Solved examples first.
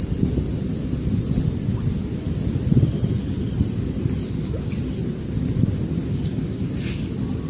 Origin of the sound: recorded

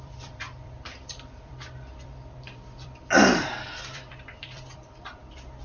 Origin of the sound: remade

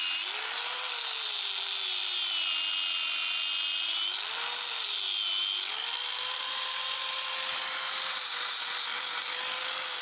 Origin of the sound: recorded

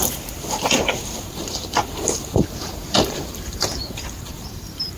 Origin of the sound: remade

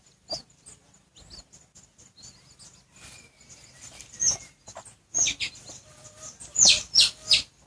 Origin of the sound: recorded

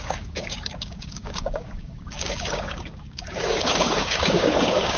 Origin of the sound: remade